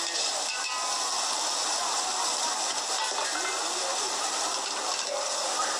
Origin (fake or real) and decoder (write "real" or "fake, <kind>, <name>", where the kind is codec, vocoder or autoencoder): real